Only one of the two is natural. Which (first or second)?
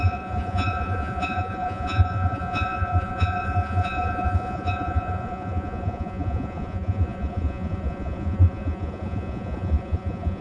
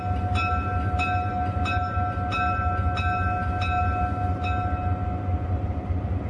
second